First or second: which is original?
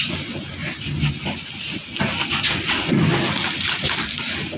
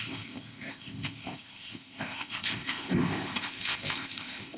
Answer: first